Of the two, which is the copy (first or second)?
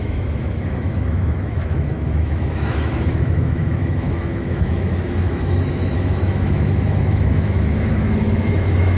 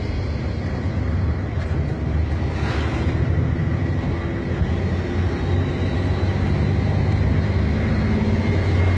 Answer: first